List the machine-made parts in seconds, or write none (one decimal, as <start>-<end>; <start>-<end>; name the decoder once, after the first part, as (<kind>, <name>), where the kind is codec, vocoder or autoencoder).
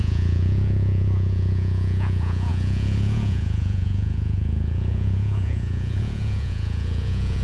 0.0-7.4 (vocoder, Vocos)